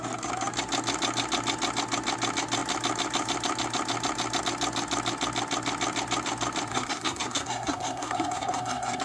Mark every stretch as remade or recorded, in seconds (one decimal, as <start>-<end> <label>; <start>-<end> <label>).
0.0-6.7 recorded; 6.7-9.0 remade